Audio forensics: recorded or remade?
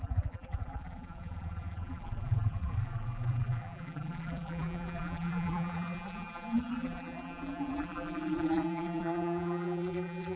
remade